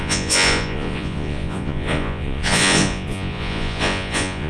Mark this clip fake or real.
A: fake